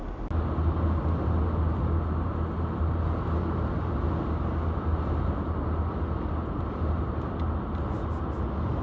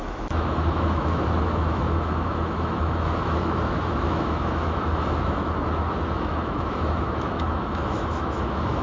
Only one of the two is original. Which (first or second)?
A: first